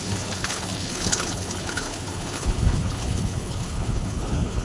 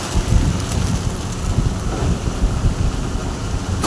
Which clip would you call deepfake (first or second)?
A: first